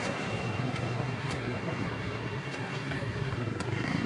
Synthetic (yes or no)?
yes